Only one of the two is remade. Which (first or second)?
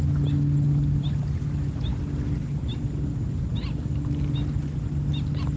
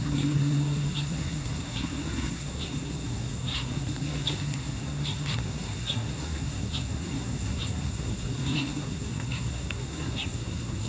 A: second